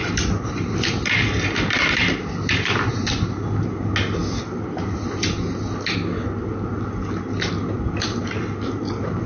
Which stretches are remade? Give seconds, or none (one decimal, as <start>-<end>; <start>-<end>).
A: 0.0-2.9; 4.2-5.2